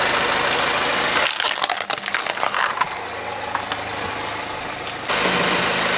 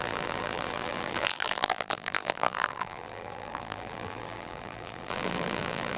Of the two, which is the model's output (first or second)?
second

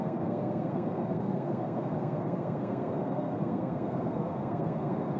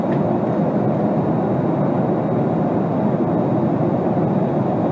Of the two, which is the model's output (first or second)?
first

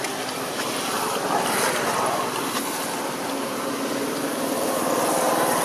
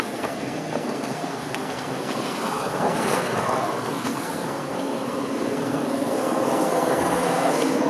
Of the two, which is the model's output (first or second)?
second